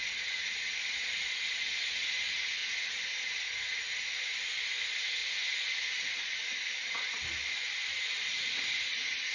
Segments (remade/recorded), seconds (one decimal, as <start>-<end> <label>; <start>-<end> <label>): 0.0-9.3 recorded